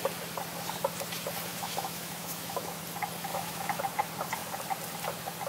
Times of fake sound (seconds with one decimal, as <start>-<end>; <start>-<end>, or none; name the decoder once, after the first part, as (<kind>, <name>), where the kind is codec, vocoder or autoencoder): 1.5-2.8 (autoencoder, DAC-VAE); 3.3-3.8